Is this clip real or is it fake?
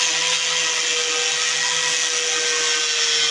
real